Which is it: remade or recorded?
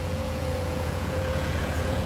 remade